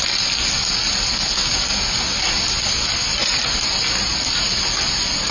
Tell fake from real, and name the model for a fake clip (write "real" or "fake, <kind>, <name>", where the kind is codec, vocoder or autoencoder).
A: real